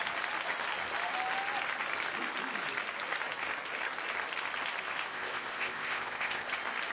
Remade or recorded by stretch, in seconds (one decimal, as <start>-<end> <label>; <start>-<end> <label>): 0.0-5.1 recorded; 5.1-6.5 remade; 6.5-6.9 recorded